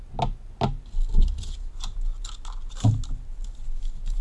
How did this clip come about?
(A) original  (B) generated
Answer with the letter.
A